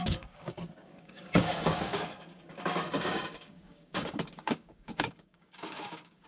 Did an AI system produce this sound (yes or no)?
yes